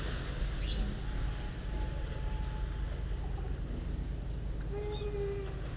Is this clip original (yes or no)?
yes